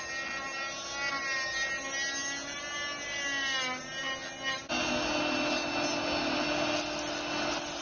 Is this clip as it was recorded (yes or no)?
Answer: yes